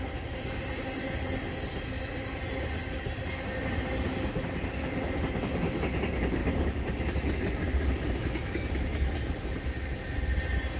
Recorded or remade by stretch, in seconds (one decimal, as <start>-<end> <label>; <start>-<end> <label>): 0.0-10.8 recorded